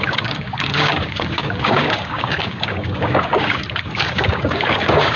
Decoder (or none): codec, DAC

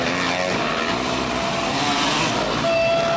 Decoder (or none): none